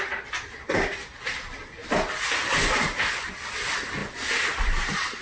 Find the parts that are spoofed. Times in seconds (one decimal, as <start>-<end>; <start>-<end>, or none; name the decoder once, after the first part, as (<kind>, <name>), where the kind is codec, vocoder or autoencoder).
none